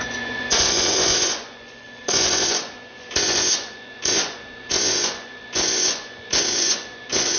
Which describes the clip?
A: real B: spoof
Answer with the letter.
B